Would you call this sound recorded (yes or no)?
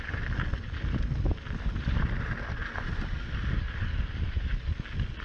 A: yes